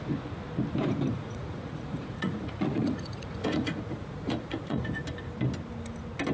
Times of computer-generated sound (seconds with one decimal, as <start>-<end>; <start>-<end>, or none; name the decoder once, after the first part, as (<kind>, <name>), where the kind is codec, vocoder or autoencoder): 1.1-4.9 (vocoder, Vocos)